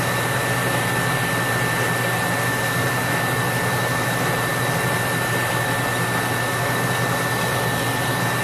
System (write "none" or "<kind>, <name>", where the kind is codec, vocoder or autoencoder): none